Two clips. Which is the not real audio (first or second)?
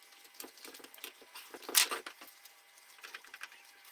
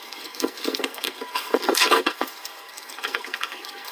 second